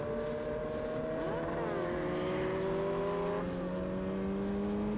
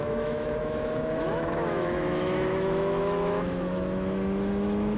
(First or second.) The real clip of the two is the first